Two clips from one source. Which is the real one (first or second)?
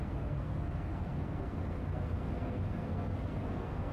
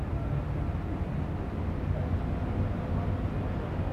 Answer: second